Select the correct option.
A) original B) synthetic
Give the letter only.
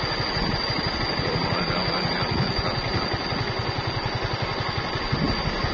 A